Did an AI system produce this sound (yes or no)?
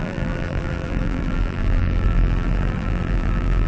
yes